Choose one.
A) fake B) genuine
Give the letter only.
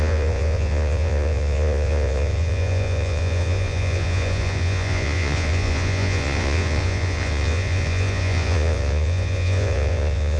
A